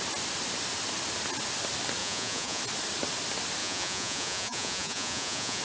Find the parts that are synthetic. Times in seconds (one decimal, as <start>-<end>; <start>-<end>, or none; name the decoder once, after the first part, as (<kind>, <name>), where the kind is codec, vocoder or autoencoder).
2.0-2.6 (vocoder, Vocos); 3.6-5.6

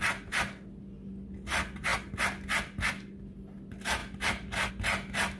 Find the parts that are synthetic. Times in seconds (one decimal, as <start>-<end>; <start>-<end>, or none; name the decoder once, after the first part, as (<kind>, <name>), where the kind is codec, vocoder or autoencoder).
none